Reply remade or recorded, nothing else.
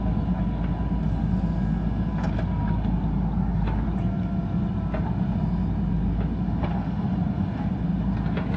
recorded